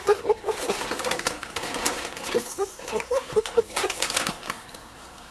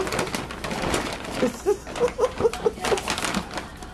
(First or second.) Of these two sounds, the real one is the second